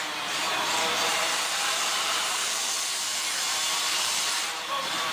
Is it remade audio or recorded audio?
remade